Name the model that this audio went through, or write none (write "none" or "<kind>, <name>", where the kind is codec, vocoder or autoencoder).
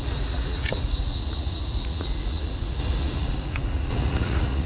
vocoder, Vocos